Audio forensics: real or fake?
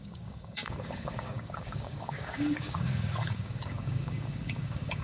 fake